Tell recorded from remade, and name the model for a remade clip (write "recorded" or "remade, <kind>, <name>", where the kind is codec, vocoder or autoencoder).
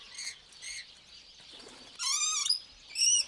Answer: recorded